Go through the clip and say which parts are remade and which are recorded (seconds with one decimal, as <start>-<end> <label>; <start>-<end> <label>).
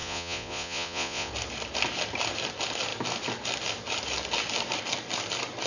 0.0-1.3 remade; 1.3-5.7 recorded